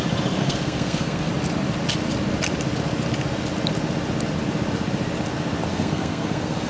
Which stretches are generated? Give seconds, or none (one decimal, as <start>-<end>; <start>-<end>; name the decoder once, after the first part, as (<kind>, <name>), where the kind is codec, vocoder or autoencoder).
0.4-1.3 (codec, SNAC); 5.7-6.7